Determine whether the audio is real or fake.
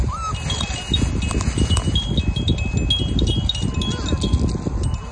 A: real